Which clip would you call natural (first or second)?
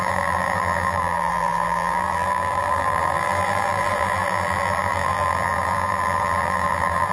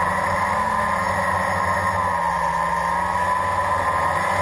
second